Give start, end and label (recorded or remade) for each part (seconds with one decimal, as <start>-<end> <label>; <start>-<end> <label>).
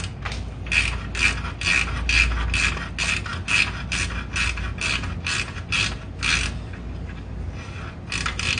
0.0-8.6 recorded